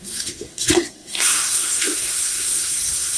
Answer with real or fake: fake